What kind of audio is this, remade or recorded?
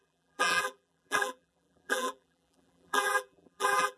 remade